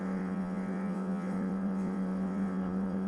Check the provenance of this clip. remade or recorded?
remade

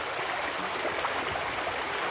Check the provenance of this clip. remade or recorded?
recorded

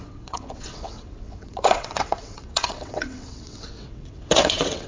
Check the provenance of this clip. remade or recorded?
remade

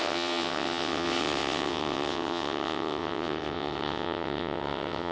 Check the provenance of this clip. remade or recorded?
remade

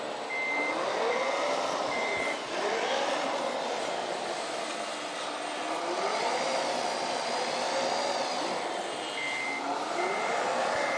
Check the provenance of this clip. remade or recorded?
recorded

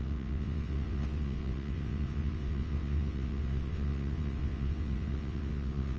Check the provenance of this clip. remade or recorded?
remade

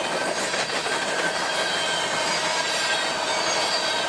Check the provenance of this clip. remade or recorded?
recorded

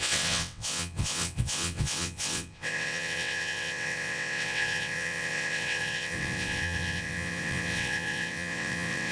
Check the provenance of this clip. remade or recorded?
remade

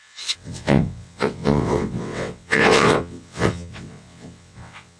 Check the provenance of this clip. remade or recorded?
remade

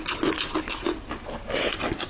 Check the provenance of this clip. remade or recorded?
recorded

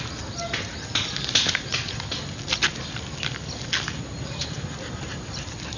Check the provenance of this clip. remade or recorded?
recorded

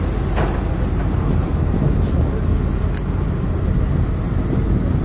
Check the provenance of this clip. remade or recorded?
recorded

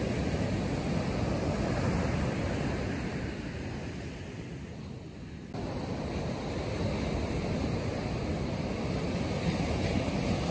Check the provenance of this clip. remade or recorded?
recorded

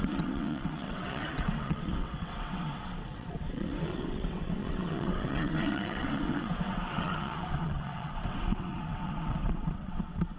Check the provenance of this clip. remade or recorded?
remade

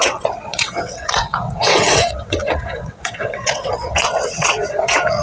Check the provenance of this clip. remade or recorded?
remade